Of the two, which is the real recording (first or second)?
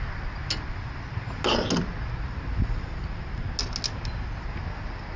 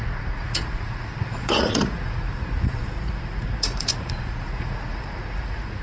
first